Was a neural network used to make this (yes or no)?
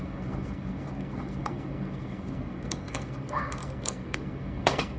yes